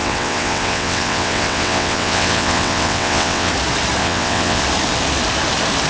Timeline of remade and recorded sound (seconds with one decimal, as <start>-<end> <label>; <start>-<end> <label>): 0.0-3.5 remade; 3.5-4.0 recorded; 4.0-4.6 remade; 4.6-5.9 recorded